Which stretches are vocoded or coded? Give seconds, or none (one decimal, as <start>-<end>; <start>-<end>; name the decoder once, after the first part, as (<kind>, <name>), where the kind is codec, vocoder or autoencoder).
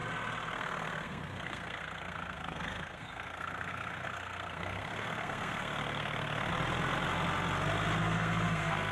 0.5-6.5 (codec, SNAC); 8.0-8.9